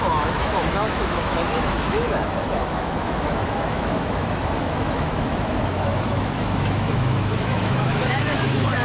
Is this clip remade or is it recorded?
remade